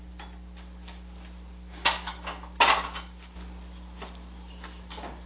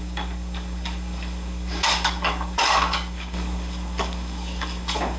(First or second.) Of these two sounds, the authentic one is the first